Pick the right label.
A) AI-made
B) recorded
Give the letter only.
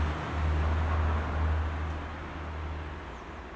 B